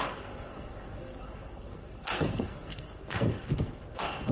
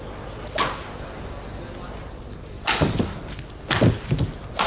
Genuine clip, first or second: second